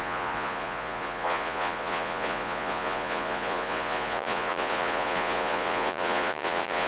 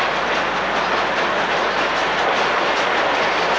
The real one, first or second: second